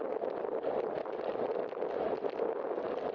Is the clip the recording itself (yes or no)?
yes